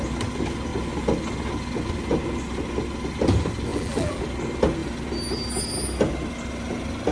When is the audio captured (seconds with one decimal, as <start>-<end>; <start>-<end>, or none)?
0.0-3.7; 4.2-7.1